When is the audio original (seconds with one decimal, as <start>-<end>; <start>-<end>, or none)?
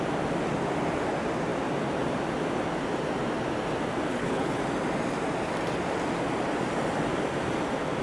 0.0-4.1; 4.6-8.0